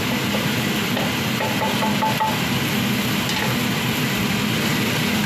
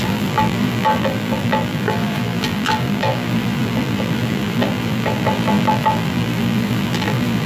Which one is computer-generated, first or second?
second